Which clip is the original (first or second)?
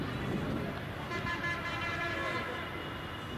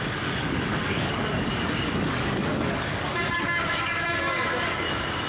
first